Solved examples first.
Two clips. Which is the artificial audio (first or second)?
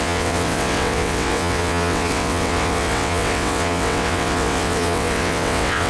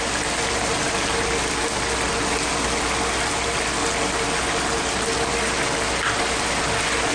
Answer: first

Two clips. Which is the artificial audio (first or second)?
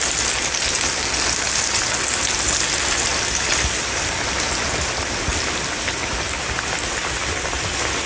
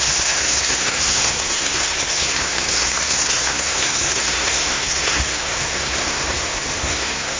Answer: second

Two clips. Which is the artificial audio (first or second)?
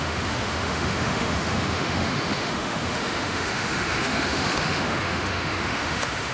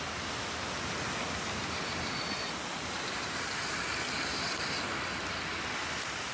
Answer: first